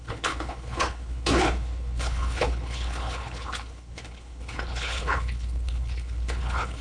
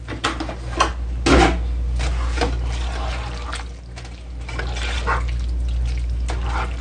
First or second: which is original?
second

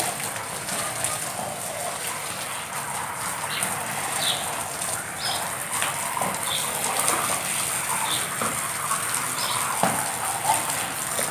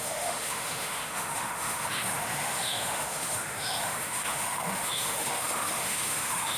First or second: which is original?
first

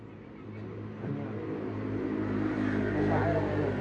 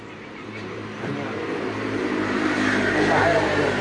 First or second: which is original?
first